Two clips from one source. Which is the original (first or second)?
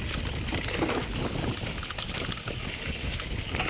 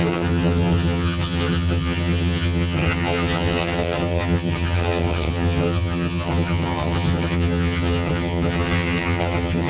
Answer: first